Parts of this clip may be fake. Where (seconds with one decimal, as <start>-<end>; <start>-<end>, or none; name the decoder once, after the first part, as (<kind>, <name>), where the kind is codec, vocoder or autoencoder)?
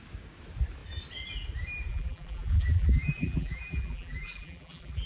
1.9-5.1 (vocoder, BigVGAN v2)